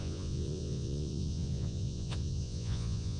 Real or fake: fake